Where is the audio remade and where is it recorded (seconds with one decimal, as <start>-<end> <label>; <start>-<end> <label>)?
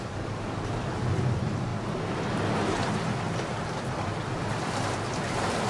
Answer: 0.0-1.7 remade; 1.7-3.5 recorded; 3.5-5.7 remade